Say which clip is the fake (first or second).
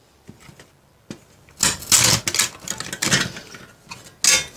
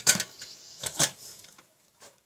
second